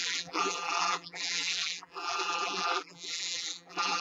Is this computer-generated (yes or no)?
yes